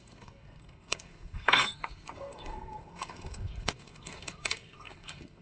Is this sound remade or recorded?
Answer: remade